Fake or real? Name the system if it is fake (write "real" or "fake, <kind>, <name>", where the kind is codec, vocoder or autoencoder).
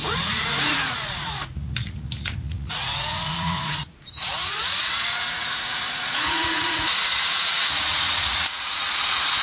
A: fake, vocoder, Vocos